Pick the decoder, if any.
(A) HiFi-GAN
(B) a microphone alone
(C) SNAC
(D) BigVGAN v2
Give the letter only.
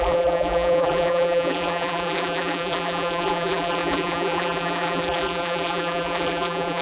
D